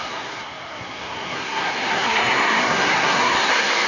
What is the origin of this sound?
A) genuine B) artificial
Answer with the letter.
B